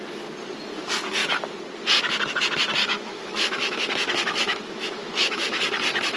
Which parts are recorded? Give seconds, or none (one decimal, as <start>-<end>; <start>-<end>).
0.0-2.8; 5.6-6.2